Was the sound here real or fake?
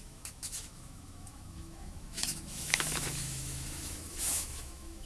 fake